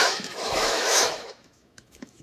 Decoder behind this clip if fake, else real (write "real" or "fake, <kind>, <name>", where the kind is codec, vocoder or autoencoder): fake, autoencoder, DAC-VAE